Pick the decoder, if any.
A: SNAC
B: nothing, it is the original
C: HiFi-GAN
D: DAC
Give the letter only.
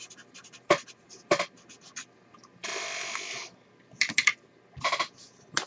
B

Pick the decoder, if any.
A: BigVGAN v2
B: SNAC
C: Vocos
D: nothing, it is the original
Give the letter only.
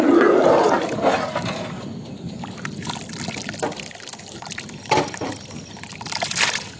D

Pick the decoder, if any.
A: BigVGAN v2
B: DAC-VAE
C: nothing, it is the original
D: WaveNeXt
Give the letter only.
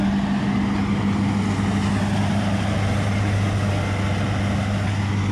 C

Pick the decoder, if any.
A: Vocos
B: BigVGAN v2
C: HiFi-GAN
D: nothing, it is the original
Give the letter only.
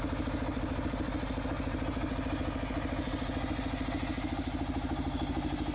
D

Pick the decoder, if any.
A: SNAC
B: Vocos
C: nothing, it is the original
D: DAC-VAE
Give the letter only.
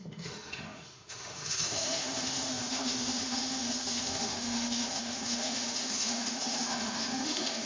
D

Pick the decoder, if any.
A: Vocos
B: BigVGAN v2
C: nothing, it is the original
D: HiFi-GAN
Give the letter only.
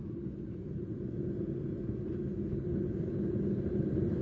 C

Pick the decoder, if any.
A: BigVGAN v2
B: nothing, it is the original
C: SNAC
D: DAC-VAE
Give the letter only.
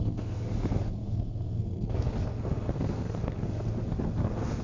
C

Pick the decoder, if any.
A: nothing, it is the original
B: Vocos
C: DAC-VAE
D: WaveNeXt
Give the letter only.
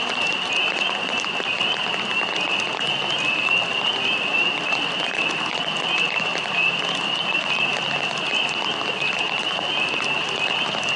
A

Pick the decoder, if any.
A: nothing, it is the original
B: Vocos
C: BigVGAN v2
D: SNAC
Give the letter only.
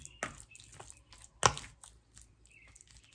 A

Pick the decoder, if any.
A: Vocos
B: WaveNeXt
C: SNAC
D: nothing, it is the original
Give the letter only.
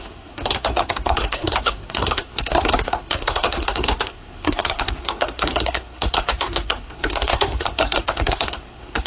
C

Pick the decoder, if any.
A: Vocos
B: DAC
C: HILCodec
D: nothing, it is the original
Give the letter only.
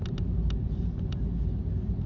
D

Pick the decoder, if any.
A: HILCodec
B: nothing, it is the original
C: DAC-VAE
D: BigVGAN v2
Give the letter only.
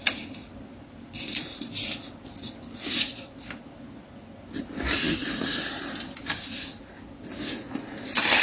B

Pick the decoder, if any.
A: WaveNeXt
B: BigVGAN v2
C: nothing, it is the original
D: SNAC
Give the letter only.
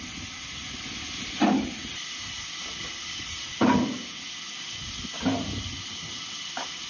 C